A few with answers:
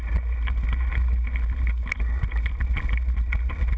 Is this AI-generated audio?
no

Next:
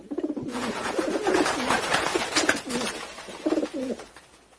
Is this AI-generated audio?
yes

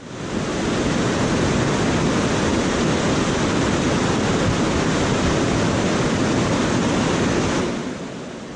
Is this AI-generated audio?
no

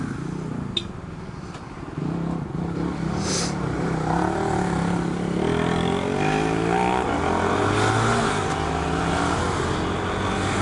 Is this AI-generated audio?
no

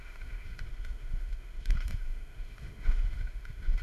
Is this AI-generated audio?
yes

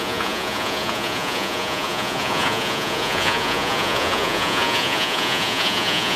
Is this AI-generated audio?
yes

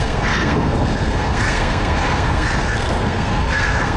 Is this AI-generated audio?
yes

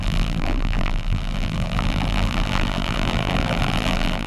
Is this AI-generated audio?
yes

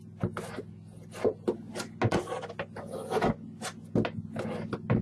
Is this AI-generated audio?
no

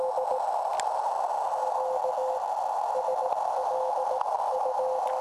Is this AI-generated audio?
no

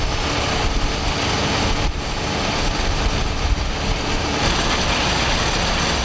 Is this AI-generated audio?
no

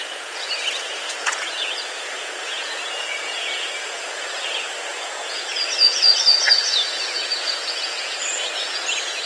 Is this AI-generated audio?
yes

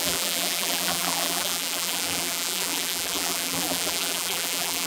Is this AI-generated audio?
yes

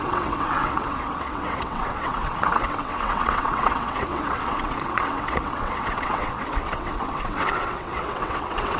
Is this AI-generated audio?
yes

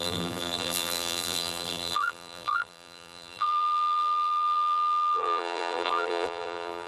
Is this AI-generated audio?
yes